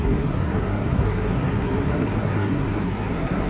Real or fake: fake